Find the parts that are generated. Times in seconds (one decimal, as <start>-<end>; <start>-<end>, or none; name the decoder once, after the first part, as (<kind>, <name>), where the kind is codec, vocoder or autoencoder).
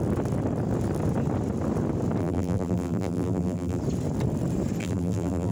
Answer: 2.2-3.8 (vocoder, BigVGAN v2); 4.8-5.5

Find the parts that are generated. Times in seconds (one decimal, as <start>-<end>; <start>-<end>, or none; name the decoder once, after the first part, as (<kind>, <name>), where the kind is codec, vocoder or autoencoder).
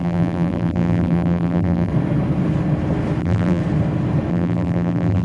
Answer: 0.0-1.9 (vocoder, BigVGAN v2); 3.2-3.6; 4.3-5.2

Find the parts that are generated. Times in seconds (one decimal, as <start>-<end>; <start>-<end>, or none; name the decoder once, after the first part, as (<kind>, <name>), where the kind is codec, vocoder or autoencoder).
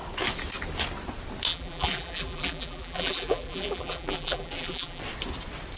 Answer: 1.5-5.0 (vocoder, BigVGAN v2)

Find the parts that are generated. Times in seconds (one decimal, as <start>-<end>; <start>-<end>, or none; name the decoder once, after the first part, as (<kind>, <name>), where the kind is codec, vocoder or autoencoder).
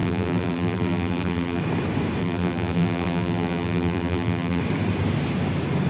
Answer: 0.0-1.6 (vocoder, BigVGAN v2); 2.2-4.6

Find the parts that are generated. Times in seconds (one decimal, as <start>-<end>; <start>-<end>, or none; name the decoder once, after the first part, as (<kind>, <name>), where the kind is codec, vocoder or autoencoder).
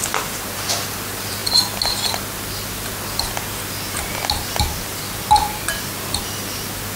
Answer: none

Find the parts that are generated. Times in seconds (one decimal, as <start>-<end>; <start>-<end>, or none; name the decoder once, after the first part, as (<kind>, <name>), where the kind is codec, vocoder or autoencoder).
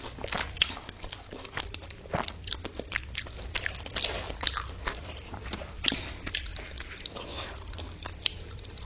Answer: 5.0-5.9 (vocoder, BigVGAN v2); 6.5-7.0